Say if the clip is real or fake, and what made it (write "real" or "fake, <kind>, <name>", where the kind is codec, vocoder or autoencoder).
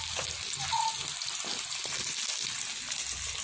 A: real